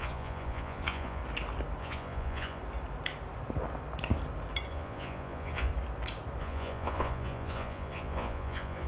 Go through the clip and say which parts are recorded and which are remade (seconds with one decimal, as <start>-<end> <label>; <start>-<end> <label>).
0.0-1.2 remade; 1.2-1.8 recorded; 1.8-2.6 remade; 2.6-4.7 recorded; 4.7-5.7 remade; 5.7-6.4 recorded; 6.4-8.9 remade